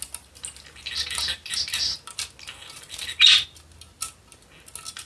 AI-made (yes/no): no